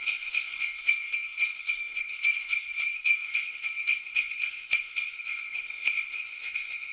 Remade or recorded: remade